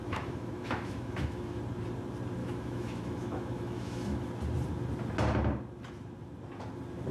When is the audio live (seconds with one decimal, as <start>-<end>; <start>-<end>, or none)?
1.6-2.4; 4.3-7.1